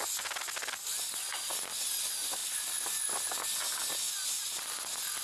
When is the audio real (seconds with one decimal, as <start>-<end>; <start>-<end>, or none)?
0.0-5.2